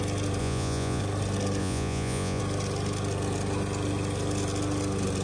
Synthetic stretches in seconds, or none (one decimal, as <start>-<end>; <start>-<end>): 0.4-1.0; 1.6-2.4